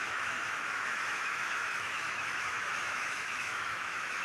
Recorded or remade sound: remade